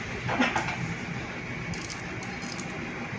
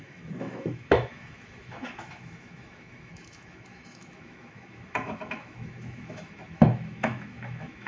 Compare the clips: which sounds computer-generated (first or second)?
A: second